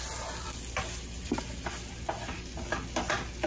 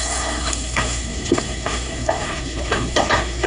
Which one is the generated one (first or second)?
second